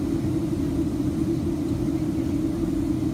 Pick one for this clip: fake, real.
real